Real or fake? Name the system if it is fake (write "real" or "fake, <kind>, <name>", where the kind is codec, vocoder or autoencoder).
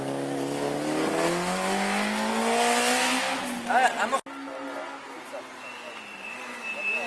real